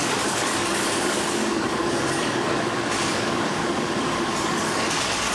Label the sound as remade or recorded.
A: remade